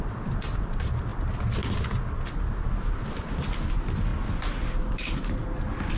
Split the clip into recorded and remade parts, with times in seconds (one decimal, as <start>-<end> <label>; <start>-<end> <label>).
0.0-6.0 recorded